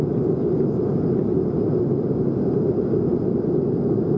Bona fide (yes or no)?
yes